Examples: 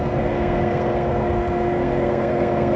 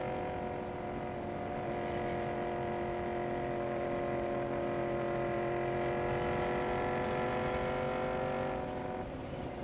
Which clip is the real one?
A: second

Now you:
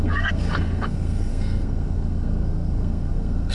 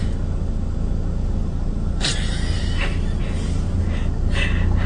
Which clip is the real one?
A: second